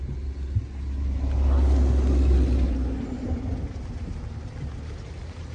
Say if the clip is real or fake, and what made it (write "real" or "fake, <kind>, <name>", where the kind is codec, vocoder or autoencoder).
real